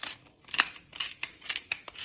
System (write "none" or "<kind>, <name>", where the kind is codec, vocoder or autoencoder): none